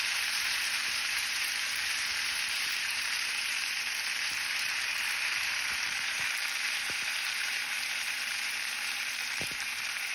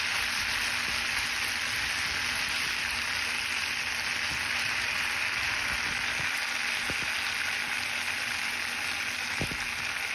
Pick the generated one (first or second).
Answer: first